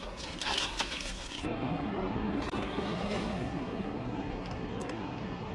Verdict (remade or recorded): remade